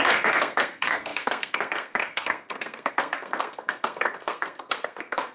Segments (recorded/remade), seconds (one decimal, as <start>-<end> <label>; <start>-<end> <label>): 0.0-5.3 remade